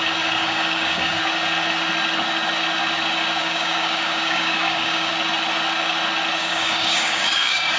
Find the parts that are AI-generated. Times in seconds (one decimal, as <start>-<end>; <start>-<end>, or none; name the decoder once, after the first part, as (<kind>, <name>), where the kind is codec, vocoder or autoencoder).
0.4-1.2 (codec, DAC); 3.4-5.1; 6.4-7.8